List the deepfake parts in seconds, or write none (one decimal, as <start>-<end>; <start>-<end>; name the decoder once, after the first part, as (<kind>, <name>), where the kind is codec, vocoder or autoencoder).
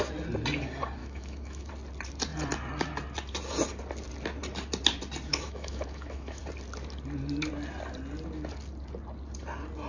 1.0-1.7 (autoencoder, DAC-VAE); 5.3-6.4